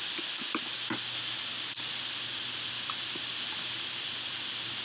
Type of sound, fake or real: real